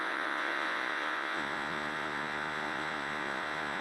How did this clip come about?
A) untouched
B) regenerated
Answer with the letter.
B